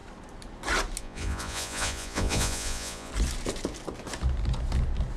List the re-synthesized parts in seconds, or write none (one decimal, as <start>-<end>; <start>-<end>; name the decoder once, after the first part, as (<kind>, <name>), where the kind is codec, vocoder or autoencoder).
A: 1.0-3.1 (vocoder, Vocos)